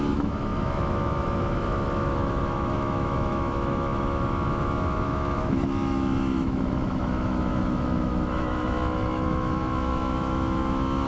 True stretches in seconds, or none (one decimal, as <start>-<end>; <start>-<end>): none